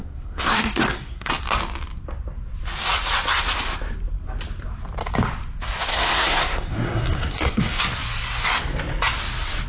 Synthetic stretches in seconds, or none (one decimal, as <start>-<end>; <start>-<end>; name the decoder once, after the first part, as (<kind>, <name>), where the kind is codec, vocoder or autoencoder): 0.0-1.3 (codec, SNAC); 5.9-7.8